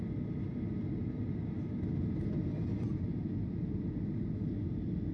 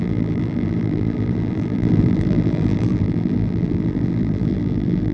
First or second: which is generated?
second